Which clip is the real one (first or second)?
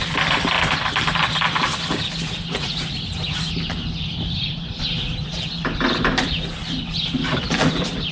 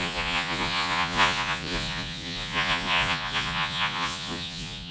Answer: first